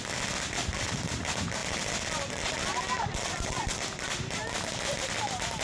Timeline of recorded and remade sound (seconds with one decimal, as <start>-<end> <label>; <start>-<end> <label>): 0.0-5.6 recorded